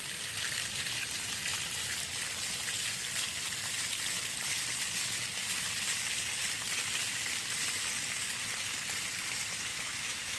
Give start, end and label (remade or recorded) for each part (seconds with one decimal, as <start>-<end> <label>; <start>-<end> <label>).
0.0-9.7 recorded; 9.7-10.4 remade